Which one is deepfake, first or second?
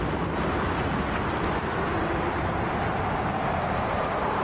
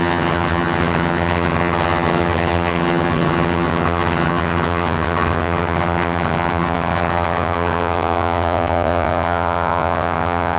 second